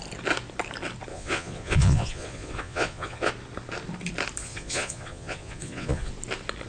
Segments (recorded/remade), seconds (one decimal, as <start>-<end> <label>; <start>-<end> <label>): 0.0-1.1 recorded; 1.1-3.3 remade; 3.3-4.4 recorded; 4.4-6.1 remade; 6.1-6.7 recorded